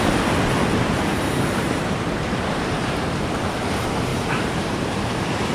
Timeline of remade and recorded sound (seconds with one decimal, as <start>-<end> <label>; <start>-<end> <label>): 0.0-1.1 recorded; 1.1-2.7 remade; 2.7-4.1 recorded; 4.1-5.5 remade